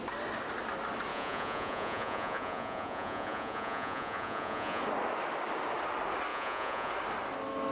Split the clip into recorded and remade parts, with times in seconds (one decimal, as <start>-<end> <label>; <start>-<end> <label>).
0.0-1.1 recorded; 1.1-4.8 remade; 4.8-6.3 recorded; 6.3-6.9 remade; 6.9-7.7 recorded